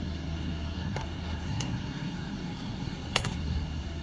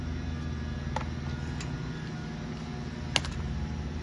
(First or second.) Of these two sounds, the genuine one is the second